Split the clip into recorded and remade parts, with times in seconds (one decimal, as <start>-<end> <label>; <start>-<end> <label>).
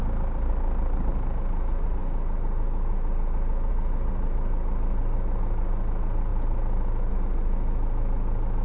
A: 0.0-8.6 recorded